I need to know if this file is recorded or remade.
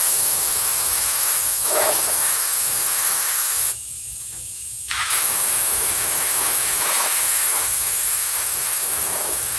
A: remade